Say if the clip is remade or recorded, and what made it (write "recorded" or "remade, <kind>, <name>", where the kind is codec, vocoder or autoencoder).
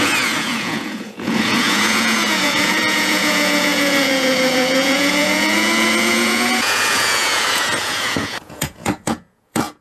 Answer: remade, vocoder, Vocos